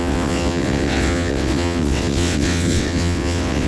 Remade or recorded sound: remade